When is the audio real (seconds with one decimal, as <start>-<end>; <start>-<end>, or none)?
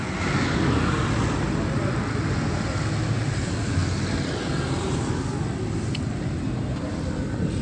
0.0-7.6